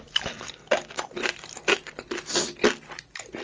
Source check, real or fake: real